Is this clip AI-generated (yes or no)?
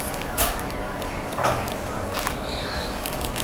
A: yes